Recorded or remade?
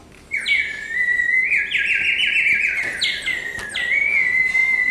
recorded